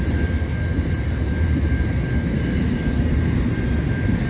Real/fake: real